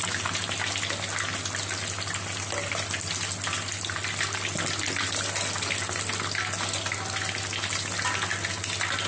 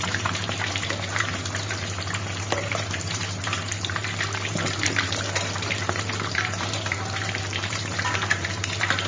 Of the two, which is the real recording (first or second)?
first